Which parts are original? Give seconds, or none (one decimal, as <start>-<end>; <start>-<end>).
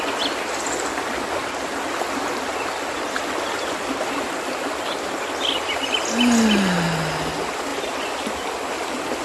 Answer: 0.0-9.2